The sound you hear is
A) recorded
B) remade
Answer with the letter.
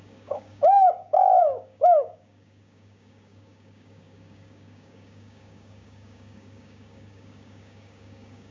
B